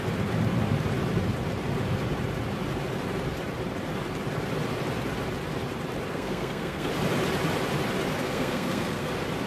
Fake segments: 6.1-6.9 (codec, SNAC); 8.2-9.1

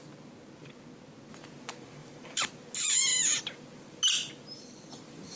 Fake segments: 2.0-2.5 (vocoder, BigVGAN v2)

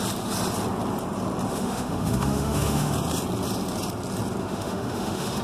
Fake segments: 1.5-2.9 (autoencoder, DAC-VAE); 4.4-5.4